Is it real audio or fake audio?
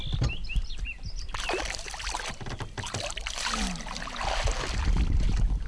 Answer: real